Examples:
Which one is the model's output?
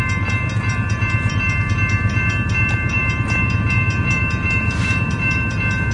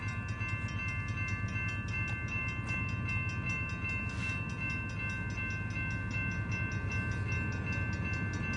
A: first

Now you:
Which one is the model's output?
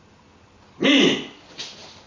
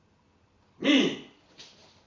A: second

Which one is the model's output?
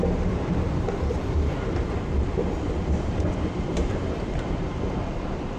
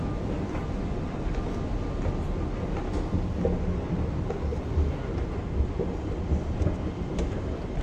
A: first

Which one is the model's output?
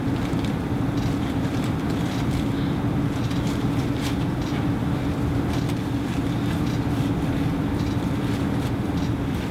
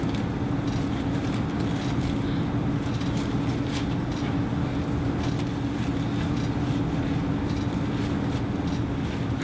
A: first